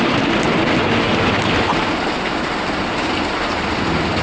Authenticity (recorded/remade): recorded